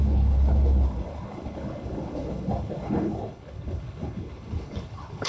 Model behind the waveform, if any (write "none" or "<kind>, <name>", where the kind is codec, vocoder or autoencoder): codec, HILCodec